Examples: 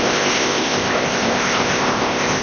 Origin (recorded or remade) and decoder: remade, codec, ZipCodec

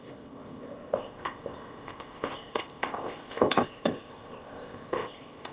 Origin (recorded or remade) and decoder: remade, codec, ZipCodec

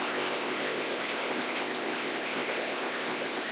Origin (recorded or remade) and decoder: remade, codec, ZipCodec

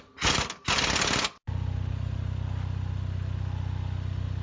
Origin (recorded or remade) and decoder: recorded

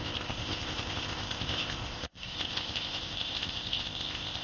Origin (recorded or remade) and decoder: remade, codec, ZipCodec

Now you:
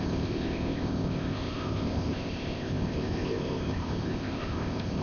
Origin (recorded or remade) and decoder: remade, codec, ZipCodec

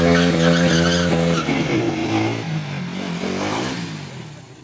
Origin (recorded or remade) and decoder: recorded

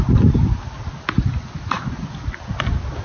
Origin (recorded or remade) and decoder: recorded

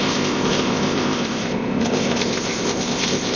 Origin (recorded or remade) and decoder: remade, codec, ZipCodec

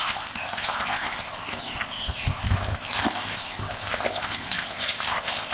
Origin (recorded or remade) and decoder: remade, codec, ZipCodec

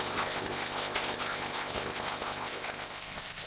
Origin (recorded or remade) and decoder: remade, codec, ZipCodec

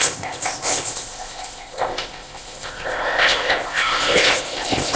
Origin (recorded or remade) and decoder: remade, codec, ZipCodec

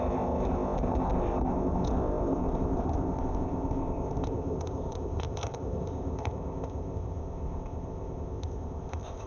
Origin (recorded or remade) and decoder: remade, codec, ZipCodec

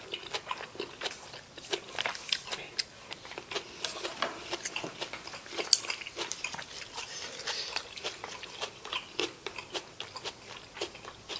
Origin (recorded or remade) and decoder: recorded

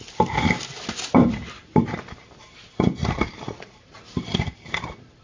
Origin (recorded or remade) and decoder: recorded